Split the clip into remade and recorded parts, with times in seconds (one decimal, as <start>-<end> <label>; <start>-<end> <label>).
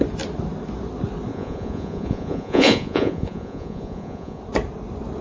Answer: 0.0-1.3 recorded; 1.3-4.4 remade; 4.4-5.2 recorded